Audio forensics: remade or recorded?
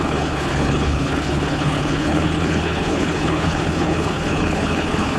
remade